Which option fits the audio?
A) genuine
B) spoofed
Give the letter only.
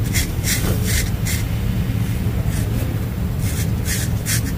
B